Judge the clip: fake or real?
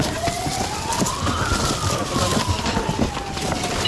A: fake